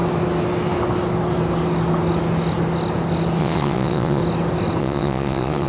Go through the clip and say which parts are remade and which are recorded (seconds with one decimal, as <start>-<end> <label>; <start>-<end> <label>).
0.0-3.4 recorded; 3.4-4.2 remade; 4.2-4.8 recorded; 4.8-5.7 remade